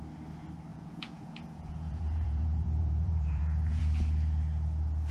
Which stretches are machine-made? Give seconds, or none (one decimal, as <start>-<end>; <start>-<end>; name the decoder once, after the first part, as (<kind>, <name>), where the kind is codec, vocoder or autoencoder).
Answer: 0.7-3.8 (vocoder, Vocos)

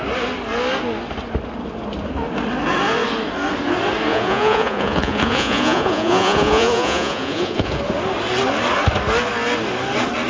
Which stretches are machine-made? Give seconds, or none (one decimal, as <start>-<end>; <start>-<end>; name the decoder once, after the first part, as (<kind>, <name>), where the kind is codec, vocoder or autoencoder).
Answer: 4.1-7.8 (vocoder, Vocos)

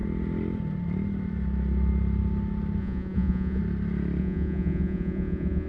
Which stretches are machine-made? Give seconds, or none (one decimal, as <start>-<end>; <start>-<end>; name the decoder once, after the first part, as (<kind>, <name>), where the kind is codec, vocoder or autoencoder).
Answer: 2.8-3.6 (vocoder, Vocos); 4.2-5.7

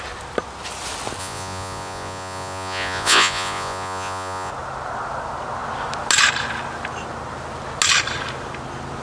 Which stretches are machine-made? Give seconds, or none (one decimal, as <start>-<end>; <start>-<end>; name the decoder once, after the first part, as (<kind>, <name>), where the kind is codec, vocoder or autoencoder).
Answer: 1.2-4.5 (vocoder, Vocos)

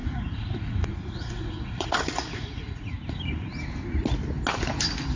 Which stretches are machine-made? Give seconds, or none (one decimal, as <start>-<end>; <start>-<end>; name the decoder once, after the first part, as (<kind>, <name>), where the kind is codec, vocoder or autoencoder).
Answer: 0.0-2.9 (vocoder, Vocos)